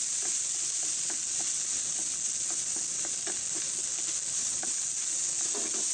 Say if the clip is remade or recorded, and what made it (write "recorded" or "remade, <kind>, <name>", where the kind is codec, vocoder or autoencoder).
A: recorded